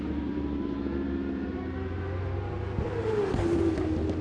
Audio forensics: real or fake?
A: real